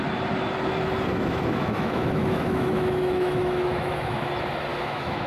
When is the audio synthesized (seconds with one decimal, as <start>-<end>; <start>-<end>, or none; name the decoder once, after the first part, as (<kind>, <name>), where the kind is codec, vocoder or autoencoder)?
1.1-4.3 (autoencoder, DAC-VAE); 4.7-5.3